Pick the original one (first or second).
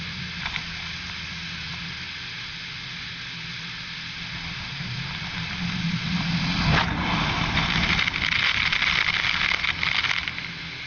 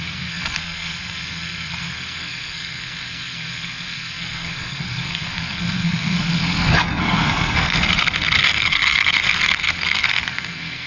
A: first